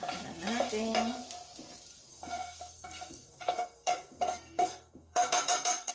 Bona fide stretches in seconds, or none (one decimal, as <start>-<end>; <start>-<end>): 0.0-2.1